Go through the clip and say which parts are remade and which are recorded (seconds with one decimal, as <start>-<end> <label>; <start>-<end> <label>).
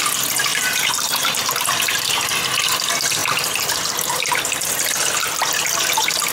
0.0-0.5 recorded; 0.5-1.3 remade; 1.3-6.3 recorded